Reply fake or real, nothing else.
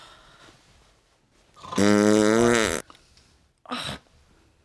real